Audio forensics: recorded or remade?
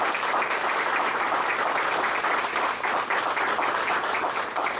recorded